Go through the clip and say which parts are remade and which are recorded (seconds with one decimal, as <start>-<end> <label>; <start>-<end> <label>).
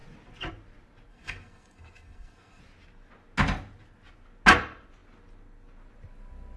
0.0-1.1 recorded; 1.1-2.6 remade; 2.6-6.6 recorded